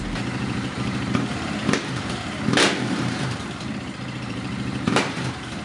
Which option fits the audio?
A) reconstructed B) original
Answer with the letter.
A